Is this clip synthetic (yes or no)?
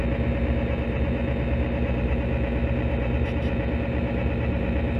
no